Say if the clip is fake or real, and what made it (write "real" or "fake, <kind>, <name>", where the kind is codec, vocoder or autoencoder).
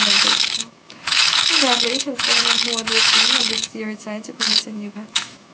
fake, autoencoder, DAC-VAE